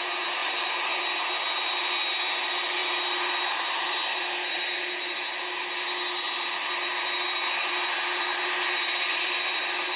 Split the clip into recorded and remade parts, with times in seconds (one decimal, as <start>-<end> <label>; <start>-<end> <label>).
0.0-0.4 recorded; 0.4-1.0 remade; 1.0-10.0 recorded